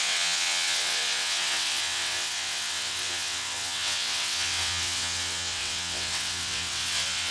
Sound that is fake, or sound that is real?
fake